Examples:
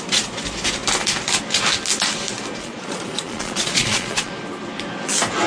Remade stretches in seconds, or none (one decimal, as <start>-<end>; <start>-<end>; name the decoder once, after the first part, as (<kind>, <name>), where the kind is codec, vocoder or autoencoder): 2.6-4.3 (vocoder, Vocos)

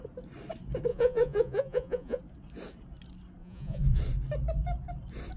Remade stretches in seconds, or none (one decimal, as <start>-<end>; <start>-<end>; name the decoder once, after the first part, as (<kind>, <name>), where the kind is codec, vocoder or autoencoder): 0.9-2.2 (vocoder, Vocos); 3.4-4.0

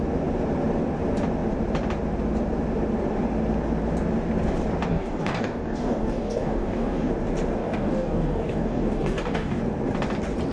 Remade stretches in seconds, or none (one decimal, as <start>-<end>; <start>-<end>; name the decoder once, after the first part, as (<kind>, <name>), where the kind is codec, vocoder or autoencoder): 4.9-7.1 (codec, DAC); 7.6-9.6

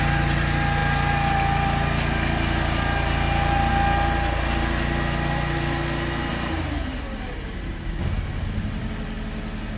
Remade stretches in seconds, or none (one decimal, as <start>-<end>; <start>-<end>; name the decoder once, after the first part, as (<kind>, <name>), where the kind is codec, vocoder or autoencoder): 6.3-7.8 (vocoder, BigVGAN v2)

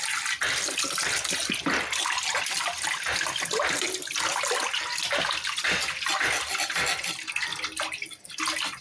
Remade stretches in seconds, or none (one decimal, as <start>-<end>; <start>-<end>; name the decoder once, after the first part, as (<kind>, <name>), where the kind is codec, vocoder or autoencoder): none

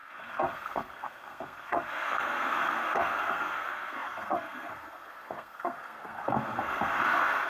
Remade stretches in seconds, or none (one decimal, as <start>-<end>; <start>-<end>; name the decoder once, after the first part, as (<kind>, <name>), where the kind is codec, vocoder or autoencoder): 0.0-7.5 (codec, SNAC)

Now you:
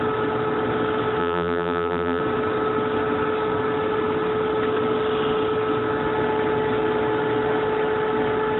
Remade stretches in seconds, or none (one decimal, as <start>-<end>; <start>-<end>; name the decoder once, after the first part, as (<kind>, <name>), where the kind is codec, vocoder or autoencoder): 1.2-2.2 (vocoder, BigVGAN v2)

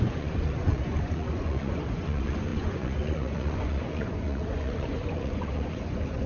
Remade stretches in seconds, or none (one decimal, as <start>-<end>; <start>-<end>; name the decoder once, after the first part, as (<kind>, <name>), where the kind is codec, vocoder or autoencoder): 0.0-6.3 (vocoder, Vocos)